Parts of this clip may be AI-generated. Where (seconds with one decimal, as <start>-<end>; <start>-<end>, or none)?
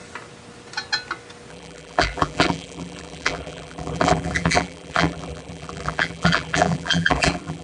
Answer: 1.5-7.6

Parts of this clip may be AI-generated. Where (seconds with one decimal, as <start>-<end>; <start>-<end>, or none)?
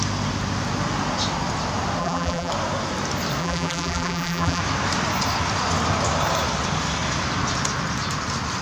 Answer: 2.0-2.5; 3.4-4.6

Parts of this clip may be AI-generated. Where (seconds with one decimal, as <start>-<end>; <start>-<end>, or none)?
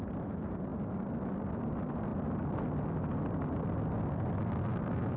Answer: none